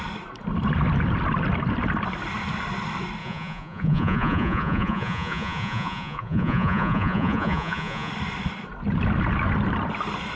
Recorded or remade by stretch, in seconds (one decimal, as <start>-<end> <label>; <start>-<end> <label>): 0.0-3.2 recorded; 3.2-8.1 remade; 8.1-10.4 recorded